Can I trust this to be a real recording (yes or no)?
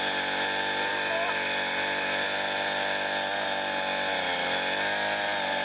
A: yes